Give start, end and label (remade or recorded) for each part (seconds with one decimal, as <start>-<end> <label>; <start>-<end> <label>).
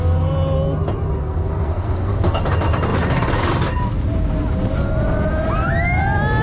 0.0-1.2 recorded; 1.2-2.4 remade; 2.4-6.4 recorded